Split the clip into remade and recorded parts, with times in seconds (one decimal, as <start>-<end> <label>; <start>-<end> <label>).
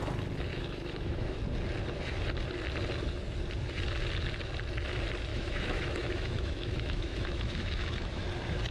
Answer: 0.0-0.5 recorded; 0.5-1.4 remade; 1.4-5.3 recorded; 5.3-8.2 remade; 8.2-8.7 recorded